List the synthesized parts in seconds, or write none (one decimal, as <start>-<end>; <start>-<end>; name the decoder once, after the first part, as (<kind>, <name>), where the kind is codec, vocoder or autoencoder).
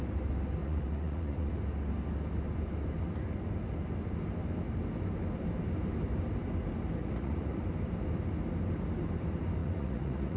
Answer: 0.6-1.5 (vocoder, Vocos); 7.0-7.6; 9.6-10.4